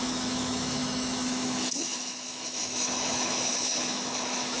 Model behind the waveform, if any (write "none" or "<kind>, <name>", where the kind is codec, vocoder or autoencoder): autoencoder, DAC-VAE